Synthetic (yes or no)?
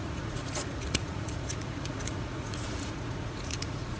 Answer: yes